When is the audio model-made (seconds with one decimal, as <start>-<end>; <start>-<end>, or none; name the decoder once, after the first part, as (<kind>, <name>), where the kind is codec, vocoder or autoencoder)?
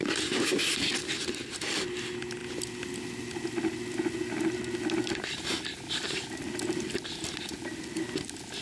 none